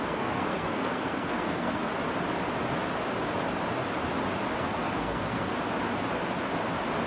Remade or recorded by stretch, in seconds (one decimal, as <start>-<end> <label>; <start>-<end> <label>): 0.0-1.8 remade; 1.8-4.6 recorded; 4.6-5.5 remade; 5.5-7.1 recorded